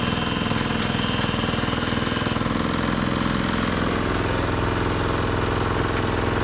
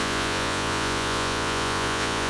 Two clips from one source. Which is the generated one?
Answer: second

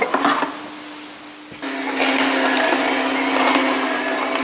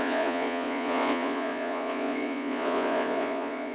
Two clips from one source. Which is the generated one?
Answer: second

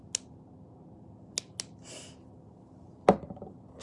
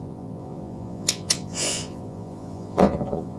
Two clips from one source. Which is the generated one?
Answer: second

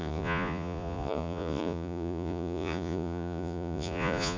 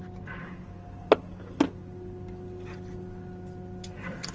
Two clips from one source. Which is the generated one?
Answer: first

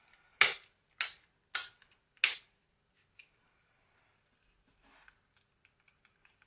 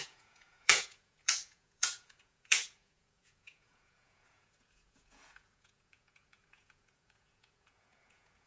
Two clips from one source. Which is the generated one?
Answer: second